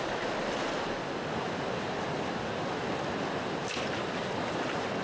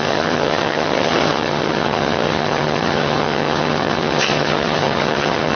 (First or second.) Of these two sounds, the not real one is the second